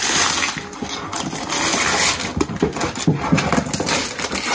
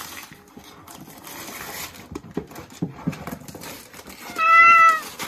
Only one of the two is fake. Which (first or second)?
second